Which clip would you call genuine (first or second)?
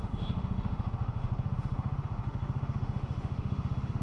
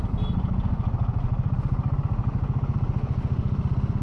second